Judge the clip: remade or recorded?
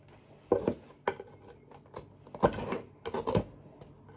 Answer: recorded